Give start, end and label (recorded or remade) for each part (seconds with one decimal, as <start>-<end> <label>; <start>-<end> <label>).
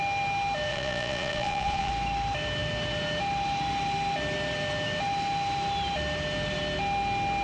0.0-0.7 recorded; 0.7-1.9 remade; 1.9-7.4 recorded